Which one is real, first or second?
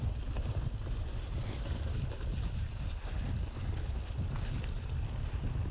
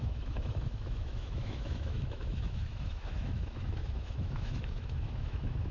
first